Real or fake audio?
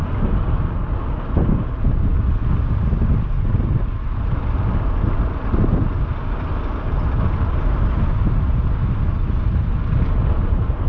real